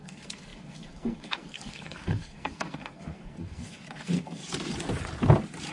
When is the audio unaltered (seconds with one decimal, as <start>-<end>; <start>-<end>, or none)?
4.4-5.7